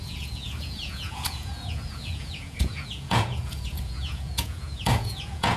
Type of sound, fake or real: fake